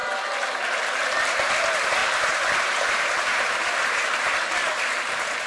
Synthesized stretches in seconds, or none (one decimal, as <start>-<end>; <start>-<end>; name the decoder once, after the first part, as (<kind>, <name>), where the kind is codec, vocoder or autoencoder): 2.0-5.5 (vocoder, BigVGAN v2)